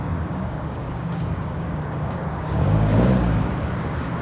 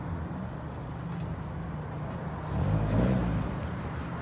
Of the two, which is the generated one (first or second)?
first